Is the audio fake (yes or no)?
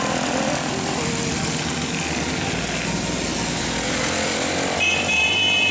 no